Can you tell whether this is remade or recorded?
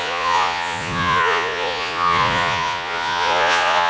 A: remade